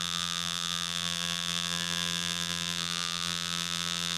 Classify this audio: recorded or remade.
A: remade